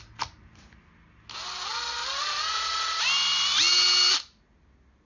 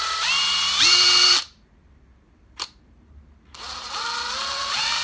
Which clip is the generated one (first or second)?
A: second